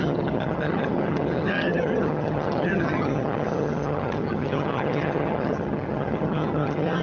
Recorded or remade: remade